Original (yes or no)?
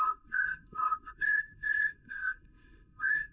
no